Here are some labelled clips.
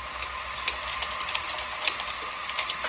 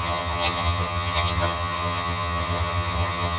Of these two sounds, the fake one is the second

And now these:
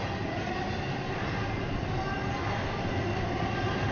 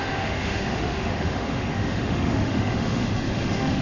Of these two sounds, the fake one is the second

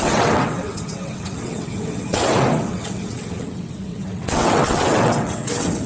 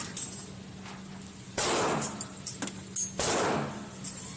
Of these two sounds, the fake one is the first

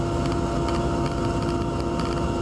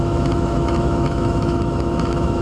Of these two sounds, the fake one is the second